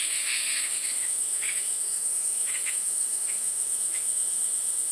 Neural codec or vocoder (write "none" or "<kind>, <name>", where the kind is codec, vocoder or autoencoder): autoencoder, DAC-VAE